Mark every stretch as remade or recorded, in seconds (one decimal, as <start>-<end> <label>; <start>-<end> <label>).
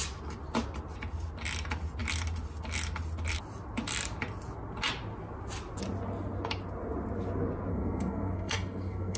0.0-7.7 recorded; 7.7-9.2 remade